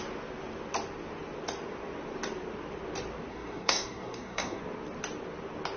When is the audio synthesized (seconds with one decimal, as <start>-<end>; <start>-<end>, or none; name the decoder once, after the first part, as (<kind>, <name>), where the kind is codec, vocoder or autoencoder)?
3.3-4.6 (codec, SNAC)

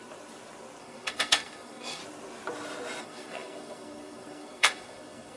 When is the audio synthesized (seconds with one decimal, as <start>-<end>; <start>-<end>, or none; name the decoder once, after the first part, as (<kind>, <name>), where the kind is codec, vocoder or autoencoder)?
0.8-2.0 (codec, SNAC); 3.0-5.4

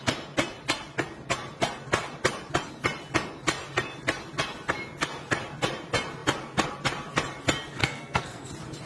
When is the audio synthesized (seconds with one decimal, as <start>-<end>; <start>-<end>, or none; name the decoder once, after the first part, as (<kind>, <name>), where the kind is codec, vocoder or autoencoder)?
7.8-8.5 (codec, SNAC)

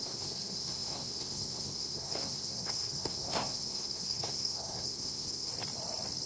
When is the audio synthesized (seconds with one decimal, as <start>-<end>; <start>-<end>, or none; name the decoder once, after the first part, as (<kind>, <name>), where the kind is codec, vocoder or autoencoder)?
0.0-5.5 (codec, SNAC)